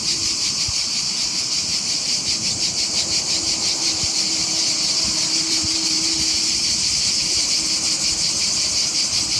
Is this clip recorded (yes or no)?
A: no